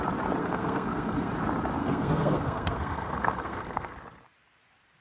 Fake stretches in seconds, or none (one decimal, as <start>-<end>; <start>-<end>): 0.4-1.3; 1.8-3.9